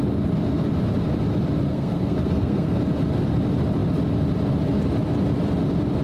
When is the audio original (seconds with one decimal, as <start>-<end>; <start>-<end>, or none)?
0.0-1.7; 2.8-6.0